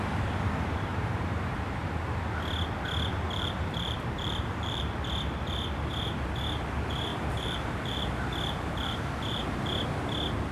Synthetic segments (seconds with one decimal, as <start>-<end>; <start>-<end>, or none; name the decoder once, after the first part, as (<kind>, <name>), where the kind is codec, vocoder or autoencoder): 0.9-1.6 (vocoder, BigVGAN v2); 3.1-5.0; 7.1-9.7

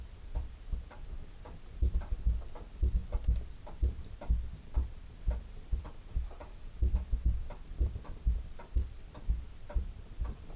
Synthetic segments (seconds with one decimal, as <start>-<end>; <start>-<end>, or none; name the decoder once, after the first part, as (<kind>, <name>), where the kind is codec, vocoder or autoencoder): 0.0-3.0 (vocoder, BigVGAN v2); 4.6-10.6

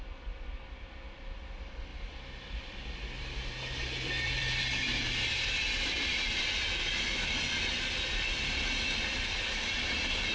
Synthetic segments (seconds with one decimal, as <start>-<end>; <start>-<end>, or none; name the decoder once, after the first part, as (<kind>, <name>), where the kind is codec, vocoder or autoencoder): 1.9-6.4 (vocoder, BigVGAN v2)

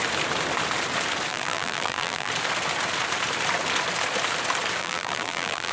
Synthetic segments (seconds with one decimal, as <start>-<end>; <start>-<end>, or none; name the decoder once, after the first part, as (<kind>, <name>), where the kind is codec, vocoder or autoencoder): 1.3-2.3 (vocoder, BigVGAN v2); 4.8-5.7

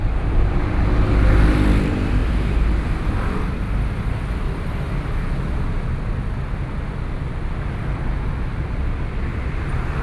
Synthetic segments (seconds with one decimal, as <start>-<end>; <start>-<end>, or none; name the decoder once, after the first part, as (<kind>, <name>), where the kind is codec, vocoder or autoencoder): none

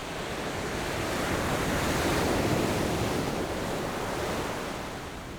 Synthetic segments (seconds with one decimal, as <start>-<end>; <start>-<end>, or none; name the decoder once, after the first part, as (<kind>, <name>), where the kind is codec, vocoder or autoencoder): 2.1-3.9 (vocoder, BigVGAN v2)